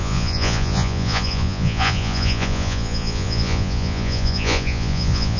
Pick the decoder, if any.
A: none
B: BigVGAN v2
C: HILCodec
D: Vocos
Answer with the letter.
D